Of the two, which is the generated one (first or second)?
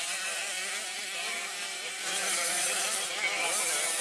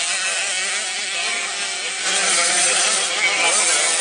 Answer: first